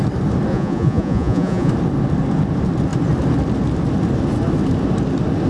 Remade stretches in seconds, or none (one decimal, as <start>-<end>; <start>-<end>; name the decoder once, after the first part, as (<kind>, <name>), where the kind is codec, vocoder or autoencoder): 0.5-1.7 (vocoder, Vocos)